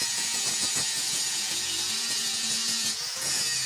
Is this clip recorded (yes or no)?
no